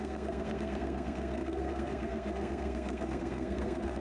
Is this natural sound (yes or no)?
no